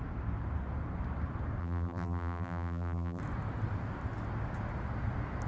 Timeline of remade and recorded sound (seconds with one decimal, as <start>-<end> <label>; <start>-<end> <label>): 0.0-1.6 recorded; 1.6-3.2 remade; 3.2-5.5 recorded